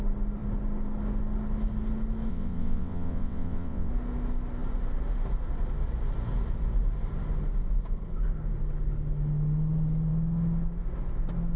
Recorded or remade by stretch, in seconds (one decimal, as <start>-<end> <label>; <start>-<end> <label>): 0.0-2.3 recorded; 2.3-3.9 remade; 3.9-11.6 recorded